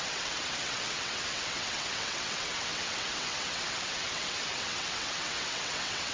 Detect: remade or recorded remade